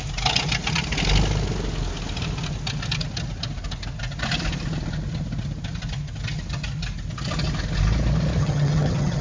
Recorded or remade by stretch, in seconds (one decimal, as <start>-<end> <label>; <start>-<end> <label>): 0.0-8.4 recorded; 8.4-9.2 remade